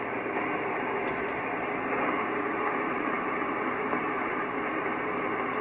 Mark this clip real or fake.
fake